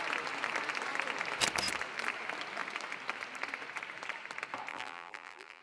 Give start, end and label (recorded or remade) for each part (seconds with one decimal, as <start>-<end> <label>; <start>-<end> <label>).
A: 0.0-4.7 recorded; 4.7-5.6 remade